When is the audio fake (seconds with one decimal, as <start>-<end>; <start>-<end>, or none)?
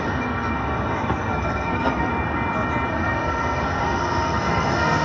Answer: 0.0-2.1; 2.9-5.0